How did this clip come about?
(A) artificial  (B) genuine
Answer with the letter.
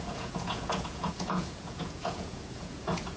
A